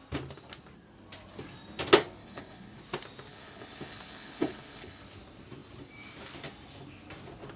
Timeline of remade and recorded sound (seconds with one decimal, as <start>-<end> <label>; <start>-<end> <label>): 0.0-2.2 recorded; 2.2-2.8 remade; 2.8-3.3 recorded; 3.3-5.0 remade; 5.0-7.6 recorded

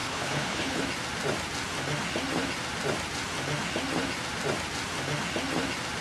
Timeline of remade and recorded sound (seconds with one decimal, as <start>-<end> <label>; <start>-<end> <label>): 0.0-0.8 remade; 0.8-6.0 recorded

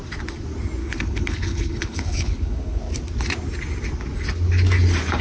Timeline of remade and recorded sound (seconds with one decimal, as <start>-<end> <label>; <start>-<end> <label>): 0.0-0.8 recorded; 0.8-2.8 remade; 2.8-5.2 recorded